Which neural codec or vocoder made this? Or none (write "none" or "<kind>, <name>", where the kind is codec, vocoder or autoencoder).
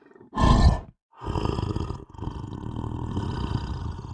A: none